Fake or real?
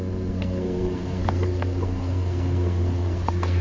fake